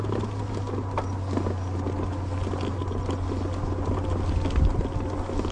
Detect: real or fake real